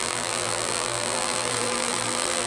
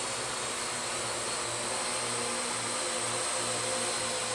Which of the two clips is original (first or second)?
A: second